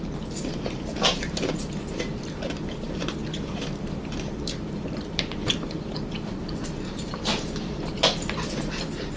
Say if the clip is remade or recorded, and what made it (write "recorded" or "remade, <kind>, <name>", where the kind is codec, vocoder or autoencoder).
remade, vocoder, BigVGAN v2